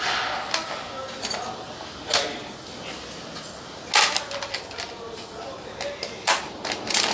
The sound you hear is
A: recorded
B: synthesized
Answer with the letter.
A